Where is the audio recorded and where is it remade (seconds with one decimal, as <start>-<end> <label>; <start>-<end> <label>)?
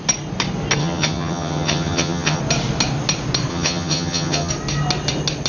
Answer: 0.0-0.8 recorded; 0.8-2.4 remade; 2.4-3.5 recorded; 3.5-4.5 remade; 4.5-5.5 recorded